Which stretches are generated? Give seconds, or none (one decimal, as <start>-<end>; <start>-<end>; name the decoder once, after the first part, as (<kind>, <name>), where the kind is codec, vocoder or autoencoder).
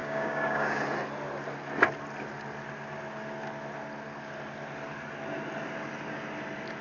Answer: 0.0-0.8 (codec, DAC)